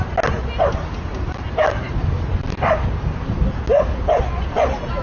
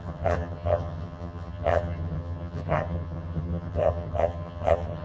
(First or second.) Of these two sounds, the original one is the first